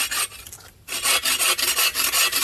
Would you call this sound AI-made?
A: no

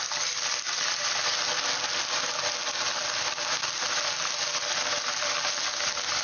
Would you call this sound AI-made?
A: no